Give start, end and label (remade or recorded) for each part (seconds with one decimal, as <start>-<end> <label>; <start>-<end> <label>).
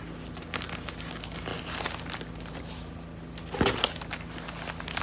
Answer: 0.0-5.0 recorded